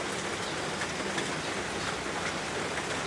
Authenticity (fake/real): real